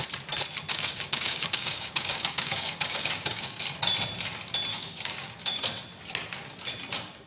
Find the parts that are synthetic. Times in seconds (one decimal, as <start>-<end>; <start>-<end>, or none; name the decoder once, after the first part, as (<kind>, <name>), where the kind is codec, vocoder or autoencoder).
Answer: 0.7-3.6 (codec, DAC); 4.7-5.6